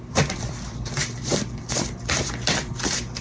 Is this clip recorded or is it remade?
remade